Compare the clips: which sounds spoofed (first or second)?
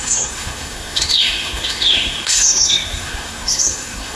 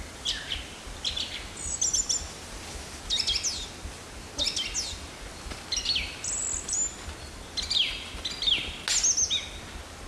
first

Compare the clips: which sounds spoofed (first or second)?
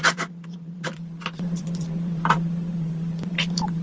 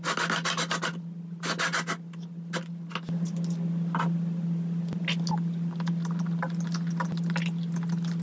first